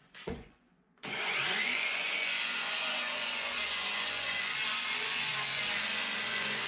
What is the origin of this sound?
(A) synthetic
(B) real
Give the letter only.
A